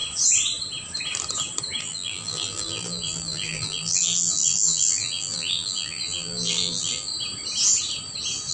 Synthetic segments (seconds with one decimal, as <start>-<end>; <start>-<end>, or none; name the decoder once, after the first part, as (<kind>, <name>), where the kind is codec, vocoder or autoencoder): 1.8-7.1 (vocoder, BigVGAN v2)